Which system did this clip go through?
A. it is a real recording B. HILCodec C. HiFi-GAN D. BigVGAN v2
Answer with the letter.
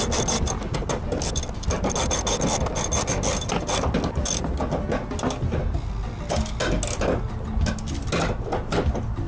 A